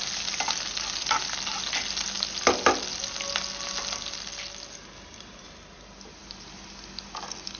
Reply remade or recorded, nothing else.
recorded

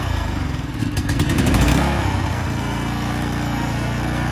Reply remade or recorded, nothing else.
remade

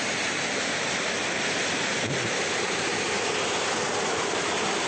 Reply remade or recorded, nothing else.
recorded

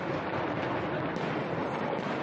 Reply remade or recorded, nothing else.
recorded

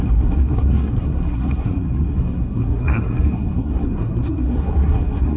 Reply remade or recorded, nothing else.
remade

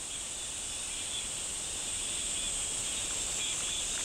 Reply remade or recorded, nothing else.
recorded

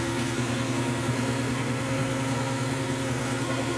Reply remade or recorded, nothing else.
remade